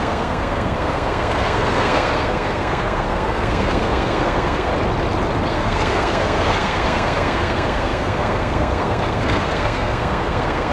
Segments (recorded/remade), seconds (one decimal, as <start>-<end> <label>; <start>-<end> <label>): 0.0-4.7 remade; 4.7-5.5 recorded; 5.5-10.7 remade